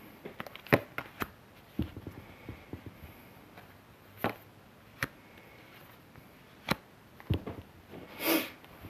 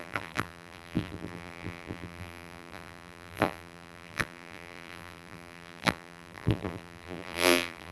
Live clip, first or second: first